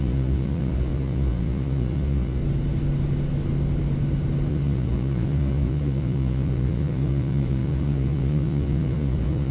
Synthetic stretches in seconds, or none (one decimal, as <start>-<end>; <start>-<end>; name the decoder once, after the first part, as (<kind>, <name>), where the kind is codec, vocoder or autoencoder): 0.0-2.4 (vocoder, Vocos); 4.5-9.5